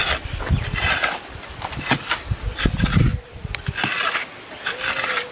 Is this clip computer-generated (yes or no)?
no